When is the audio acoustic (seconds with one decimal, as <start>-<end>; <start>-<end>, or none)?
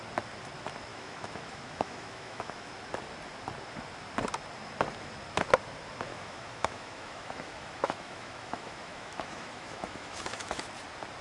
0.0-0.9; 2.7-6.1; 10.7-11.2